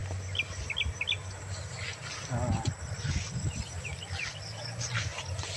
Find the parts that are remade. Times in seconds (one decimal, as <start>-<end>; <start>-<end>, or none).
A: none